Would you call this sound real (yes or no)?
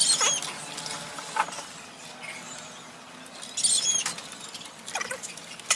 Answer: yes